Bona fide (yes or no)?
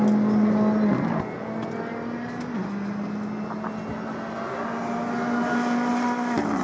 yes